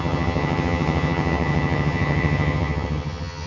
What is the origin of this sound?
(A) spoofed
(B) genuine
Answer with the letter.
A